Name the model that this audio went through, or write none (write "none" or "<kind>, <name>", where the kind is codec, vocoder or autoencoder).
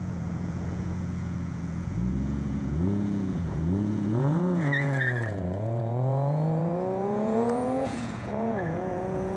vocoder, Vocos